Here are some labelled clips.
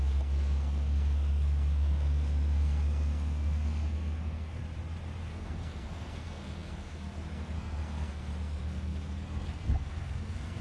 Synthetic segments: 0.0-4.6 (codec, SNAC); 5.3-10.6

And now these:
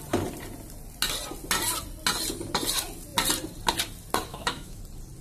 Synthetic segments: 4.3-4.8 (autoencoder, DAC-VAE)

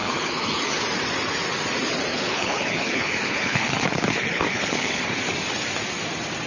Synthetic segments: 0.0-0.8 (codec, HILCodec); 2.1-5.0